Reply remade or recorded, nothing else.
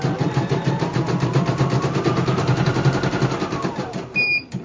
recorded